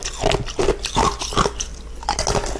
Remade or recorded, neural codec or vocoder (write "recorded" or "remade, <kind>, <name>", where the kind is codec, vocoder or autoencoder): recorded